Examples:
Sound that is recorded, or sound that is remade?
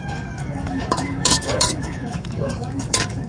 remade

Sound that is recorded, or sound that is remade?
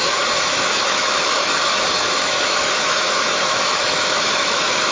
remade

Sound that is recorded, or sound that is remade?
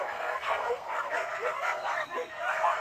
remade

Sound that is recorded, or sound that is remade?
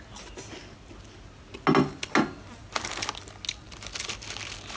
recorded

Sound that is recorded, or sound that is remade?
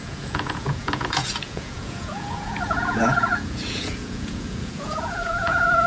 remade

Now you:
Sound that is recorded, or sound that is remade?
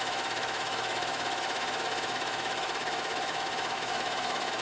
remade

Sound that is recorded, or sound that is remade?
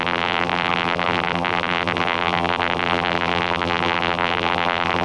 remade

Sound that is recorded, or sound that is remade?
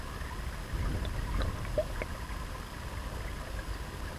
recorded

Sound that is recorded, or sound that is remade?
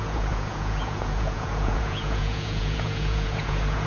remade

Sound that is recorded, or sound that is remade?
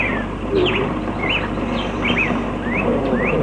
recorded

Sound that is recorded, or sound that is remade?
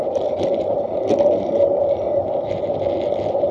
recorded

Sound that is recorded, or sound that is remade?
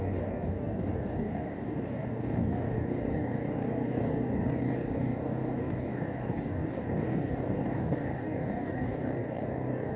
remade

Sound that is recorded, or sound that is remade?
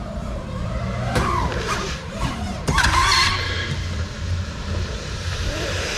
remade